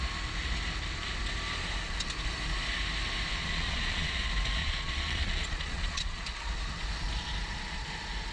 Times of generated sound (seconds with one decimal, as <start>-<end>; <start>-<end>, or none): 3.4-4.1; 4.6-6.2